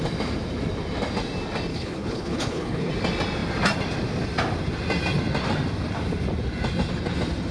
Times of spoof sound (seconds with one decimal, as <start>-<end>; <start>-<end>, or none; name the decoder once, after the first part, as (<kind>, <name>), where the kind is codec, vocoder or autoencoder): 1.7-2.9 (codec, HILCodec)